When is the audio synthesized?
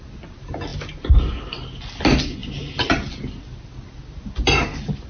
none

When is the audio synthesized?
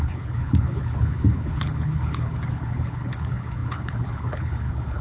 0.0-5.0 (codec, HILCodec)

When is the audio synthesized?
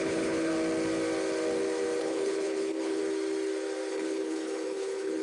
0.0-0.5 (codec, HILCodec); 2.0-3.0; 3.9-5.2